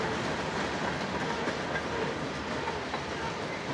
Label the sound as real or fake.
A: real